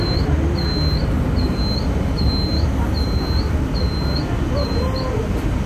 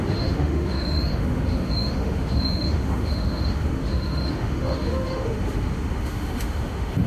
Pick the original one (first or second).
first